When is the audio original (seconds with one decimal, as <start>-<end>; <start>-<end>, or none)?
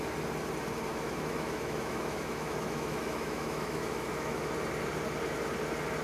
0.0-0.9; 4.5-6.0